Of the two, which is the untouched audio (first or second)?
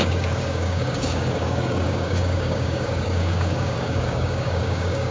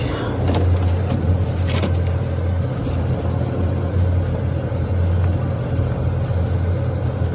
second